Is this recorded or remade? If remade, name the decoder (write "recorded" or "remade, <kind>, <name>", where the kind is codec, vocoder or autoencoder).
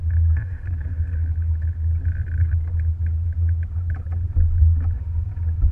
recorded